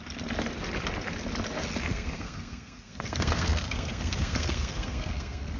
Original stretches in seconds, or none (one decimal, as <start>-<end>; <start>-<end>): 0.0-1.9